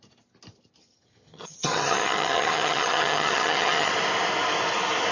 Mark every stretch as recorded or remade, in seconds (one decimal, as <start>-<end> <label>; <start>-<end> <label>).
0.0-0.8 recorded; 0.8-3.9 remade; 3.9-5.1 recorded